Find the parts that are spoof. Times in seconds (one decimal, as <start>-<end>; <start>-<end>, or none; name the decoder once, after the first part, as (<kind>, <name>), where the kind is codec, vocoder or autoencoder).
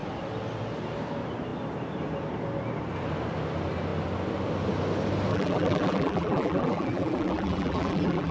5.3-8.3 (vocoder, BigVGAN v2)